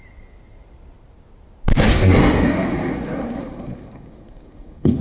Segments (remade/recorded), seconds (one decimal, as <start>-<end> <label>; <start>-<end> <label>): 0.0-1.8 recorded; 1.8-5.0 remade